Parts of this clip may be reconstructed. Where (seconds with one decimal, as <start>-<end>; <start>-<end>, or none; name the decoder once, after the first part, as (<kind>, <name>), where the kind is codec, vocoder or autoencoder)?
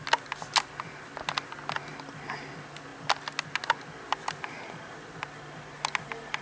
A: none